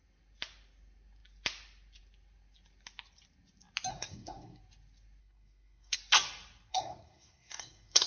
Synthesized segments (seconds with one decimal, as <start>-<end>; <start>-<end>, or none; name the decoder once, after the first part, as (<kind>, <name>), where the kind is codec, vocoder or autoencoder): 3.9-4.6 (codec, SNAC); 5.2-6.0; 6.7-8.1